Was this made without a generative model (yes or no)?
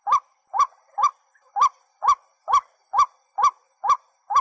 yes